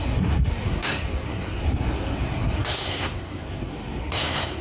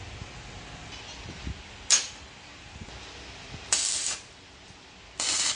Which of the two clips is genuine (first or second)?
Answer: second